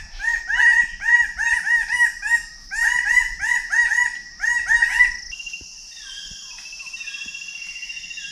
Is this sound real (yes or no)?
yes